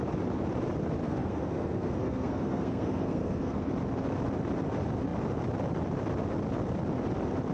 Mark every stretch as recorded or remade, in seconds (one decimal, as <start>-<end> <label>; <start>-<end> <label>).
0.0-1.0 recorded; 1.0-3.7 remade; 3.7-7.5 recorded